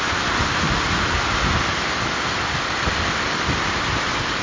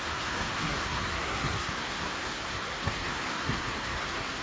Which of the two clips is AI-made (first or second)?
second